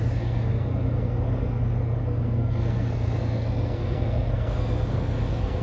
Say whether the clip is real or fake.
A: fake